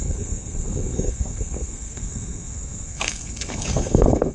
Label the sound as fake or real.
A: fake